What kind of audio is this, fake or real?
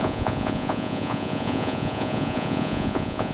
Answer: fake